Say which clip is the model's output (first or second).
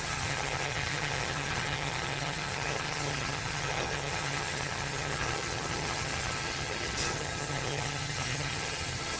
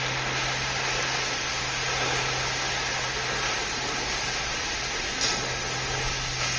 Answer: first